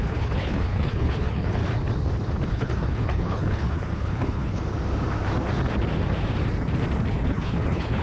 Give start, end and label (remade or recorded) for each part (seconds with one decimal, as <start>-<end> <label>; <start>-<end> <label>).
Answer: 0.0-1.6 remade; 1.6-2.5 recorded; 2.5-4.6 remade; 4.6-7.1 recorded; 7.1-8.0 remade